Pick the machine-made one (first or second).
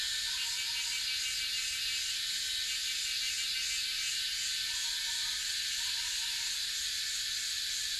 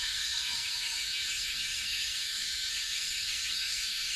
second